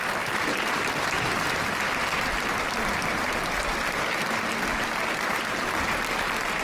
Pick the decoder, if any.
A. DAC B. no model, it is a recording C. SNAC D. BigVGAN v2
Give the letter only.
B